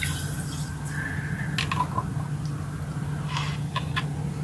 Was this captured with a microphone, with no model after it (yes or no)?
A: yes